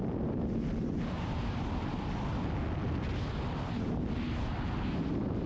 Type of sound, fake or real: real